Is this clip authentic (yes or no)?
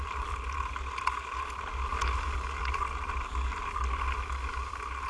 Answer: yes